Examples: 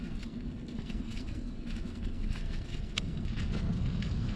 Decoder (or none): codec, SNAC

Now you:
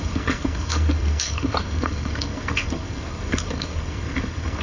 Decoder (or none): codec, SNAC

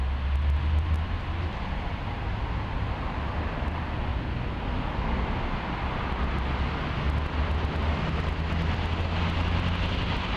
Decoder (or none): none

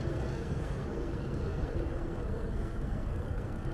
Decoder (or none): codec, SNAC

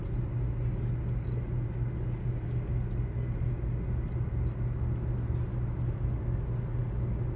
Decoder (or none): none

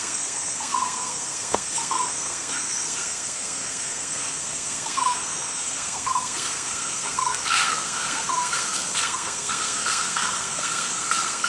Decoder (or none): codec, SNAC